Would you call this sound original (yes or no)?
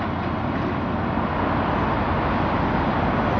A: yes